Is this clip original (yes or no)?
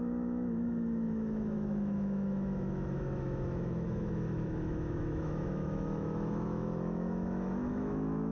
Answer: no